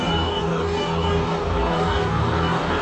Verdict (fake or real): fake